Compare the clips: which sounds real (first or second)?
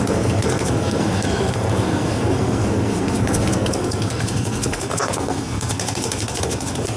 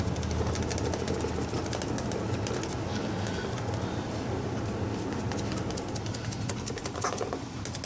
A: second